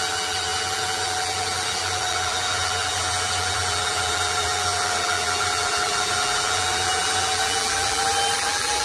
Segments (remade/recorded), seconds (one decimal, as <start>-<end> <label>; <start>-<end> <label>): 0.0-8.8 remade